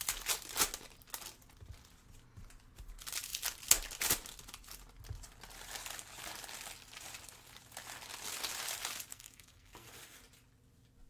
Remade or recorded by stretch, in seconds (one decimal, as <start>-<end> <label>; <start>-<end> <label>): 0.0-9.1 recorded; 9.1-10.2 remade; 10.2-11.1 recorded